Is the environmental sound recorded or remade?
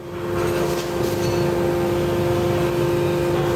recorded